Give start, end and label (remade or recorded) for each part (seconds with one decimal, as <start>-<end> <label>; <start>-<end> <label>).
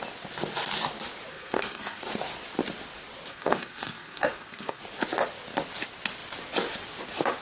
0.0-1.3 recorded; 1.3-2.0 remade; 2.0-3.3 recorded; 3.3-4.8 remade; 4.8-7.4 recorded